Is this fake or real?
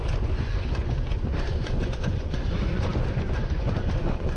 fake